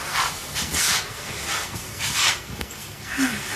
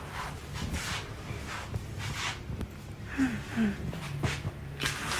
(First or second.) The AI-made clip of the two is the first